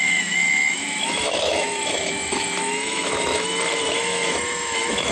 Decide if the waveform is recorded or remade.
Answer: remade